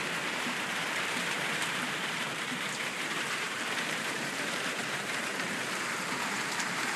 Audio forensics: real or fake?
fake